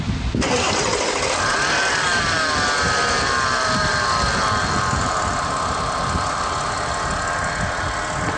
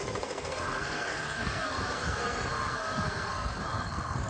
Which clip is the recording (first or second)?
first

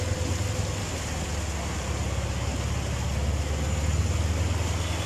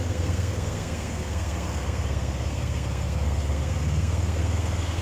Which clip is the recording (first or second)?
first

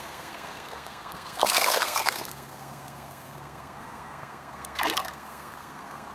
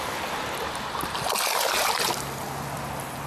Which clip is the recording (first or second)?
second